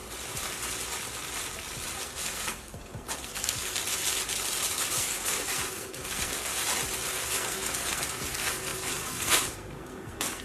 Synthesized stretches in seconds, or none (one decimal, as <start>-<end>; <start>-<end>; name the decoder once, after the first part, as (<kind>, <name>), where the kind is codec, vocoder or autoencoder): 2.0-3.8 (codec, SNAC); 4.9-6.5; 7.1-10.4